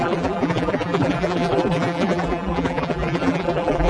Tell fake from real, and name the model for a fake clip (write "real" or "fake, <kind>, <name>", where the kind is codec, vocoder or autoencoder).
fake, vocoder, BigVGAN v2